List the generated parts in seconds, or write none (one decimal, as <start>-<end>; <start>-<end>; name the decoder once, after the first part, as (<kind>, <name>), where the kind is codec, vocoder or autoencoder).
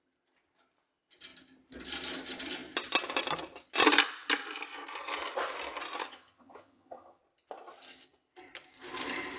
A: 6.0-7.2 (vocoder, HiFi-GAN)